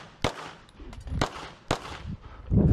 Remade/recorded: recorded